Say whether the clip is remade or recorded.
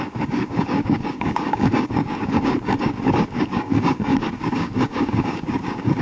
remade